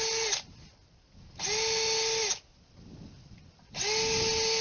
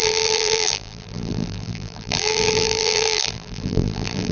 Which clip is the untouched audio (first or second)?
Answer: first